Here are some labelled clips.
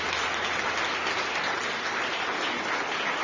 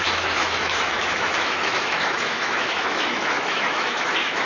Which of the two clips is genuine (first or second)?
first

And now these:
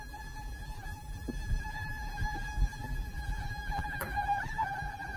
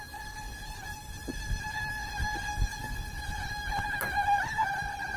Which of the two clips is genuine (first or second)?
second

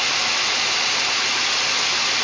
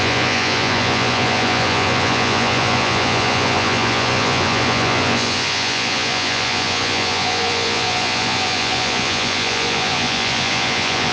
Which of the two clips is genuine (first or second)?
first